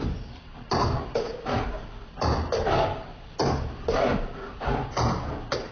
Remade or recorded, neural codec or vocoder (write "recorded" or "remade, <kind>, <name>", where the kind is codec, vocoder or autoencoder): recorded